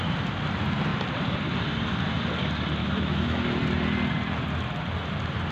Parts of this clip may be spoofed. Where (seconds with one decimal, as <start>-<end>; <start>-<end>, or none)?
2.8-3.4